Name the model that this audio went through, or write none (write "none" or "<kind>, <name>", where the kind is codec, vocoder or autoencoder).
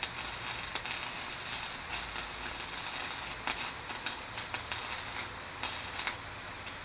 none